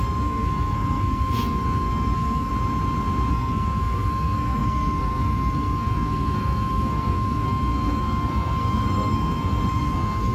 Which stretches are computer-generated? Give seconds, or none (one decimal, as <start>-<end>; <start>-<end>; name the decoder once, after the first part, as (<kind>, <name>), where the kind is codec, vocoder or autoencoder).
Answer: 0.0-2.5 (codec, SNAC); 3.3-10.3